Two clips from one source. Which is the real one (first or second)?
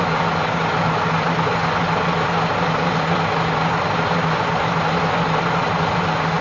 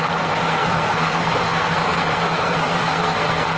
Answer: first